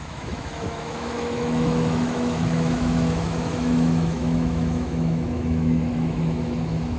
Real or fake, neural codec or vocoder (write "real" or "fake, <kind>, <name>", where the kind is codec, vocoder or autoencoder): fake, autoencoder, DAC-VAE